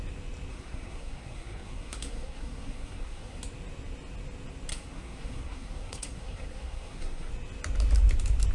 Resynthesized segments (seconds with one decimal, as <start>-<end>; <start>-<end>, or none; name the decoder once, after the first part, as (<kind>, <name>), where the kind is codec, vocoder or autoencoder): 0.5-3.4 (codec, SNAC); 4.7-7.3